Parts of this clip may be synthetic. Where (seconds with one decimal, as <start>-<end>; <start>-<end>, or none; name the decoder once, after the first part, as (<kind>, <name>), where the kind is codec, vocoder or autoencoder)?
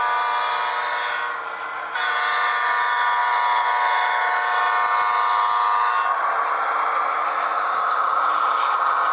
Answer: 7.5-8.1 (vocoder, BigVGAN v2)